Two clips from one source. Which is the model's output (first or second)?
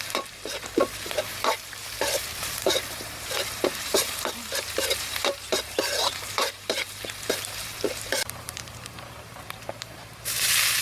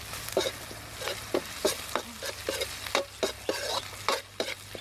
first